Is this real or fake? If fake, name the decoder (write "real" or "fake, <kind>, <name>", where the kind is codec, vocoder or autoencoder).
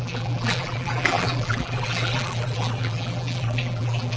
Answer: fake, vocoder, BigVGAN v2